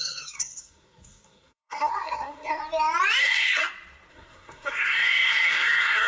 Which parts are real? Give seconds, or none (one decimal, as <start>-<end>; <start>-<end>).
2.6-3.2; 3.6-4.1